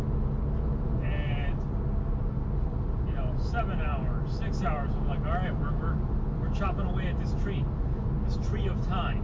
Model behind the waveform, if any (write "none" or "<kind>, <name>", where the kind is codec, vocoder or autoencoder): none